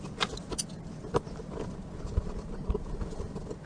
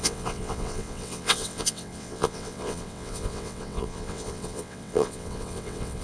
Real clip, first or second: first